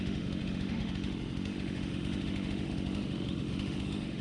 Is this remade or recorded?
remade